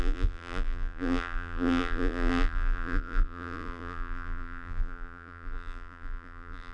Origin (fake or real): fake